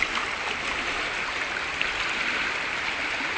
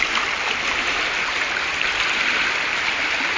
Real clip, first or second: first